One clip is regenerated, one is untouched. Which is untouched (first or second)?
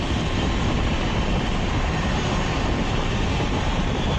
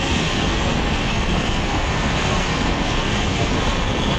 first